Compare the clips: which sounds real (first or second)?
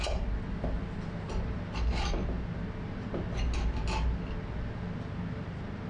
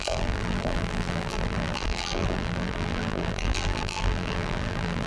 first